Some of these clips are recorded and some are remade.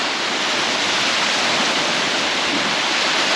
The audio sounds recorded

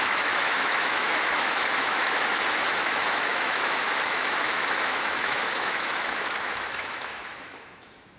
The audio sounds remade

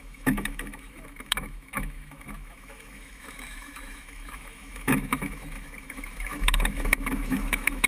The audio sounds remade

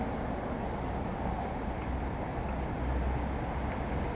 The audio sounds recorded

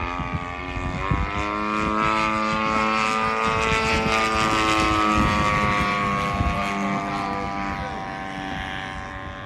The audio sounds recorded